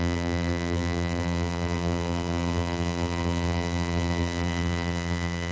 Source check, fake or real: fake